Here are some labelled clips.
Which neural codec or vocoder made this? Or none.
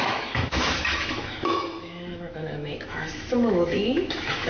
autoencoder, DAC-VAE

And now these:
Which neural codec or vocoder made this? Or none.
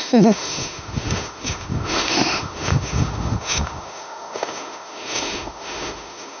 autoencoder, DAC-VAE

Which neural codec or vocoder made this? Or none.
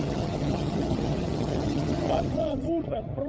vocoder, HiFi-GAN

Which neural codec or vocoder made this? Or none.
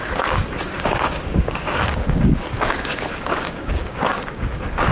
codec, DAC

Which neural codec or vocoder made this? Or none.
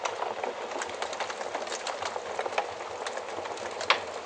none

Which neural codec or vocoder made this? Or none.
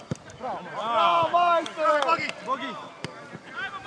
none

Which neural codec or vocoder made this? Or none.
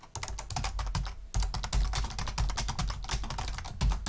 none